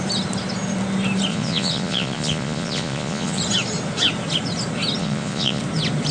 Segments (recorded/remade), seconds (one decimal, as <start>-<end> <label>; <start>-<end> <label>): 0.0-1.3 recorded; 1.3-3.4 remade; 3.4-5.0 recorded; 5.0-5.6 remade; 5.6-6.1 recorded